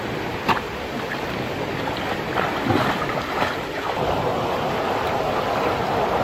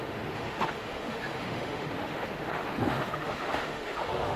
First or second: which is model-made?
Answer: second